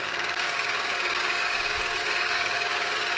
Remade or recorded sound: remade